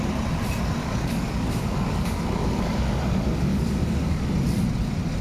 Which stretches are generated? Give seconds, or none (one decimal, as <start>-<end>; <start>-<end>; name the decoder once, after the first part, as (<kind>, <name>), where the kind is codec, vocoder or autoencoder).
0.8-3.0 (codec, DAC); 3.5-4.3